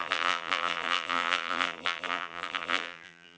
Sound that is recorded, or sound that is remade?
remade